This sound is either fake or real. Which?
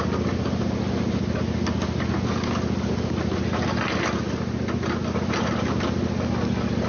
real